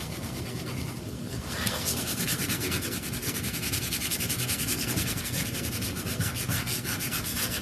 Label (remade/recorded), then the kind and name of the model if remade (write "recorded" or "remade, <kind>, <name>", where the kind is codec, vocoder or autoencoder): remade, codec, SNAC